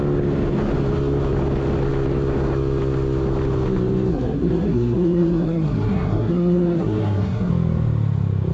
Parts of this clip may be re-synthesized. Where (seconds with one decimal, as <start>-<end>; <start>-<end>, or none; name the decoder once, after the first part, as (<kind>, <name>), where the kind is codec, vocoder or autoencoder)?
4.1-7.5 (codec, SNAC)